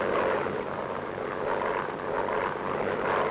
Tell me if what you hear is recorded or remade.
recorded